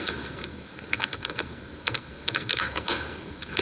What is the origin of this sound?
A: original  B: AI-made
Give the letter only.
B